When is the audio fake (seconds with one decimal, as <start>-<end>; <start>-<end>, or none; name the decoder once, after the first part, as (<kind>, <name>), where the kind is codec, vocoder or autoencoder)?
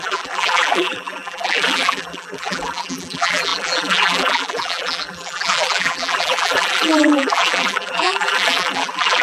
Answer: 0.0-9.2 (vocoder, BigVGAN v2)